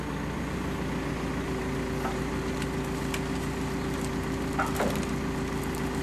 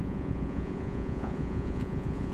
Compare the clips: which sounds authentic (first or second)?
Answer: first